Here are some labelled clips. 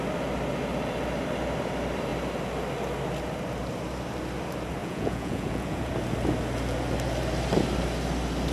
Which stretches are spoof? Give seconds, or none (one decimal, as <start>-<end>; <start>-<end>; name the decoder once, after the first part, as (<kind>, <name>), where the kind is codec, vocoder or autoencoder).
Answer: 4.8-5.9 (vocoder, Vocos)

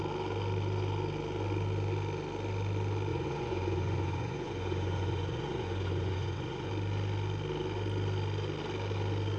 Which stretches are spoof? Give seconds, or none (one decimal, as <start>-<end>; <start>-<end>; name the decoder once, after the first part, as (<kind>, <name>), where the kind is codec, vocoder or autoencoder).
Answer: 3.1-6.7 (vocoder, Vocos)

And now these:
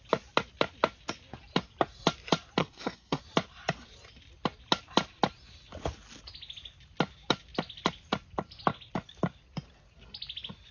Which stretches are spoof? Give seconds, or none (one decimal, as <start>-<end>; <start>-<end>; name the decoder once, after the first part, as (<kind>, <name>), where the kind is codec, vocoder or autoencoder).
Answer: 2.6-3.2 (codec, SNAC)

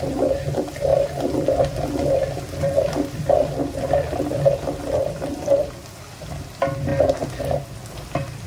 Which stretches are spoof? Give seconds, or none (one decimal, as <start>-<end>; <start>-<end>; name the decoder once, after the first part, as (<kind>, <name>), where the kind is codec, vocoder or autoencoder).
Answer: 0.9-6.0 (vocoder, BigVGAN v2)